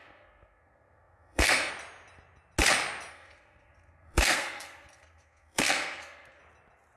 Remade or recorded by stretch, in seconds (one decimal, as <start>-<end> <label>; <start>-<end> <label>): 0.0-1.7 remade; 1.7-3.1 recorded; 3.1-6.4 remade; 6.4-7.0 recorded